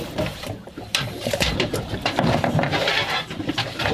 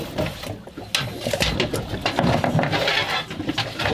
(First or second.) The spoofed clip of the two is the first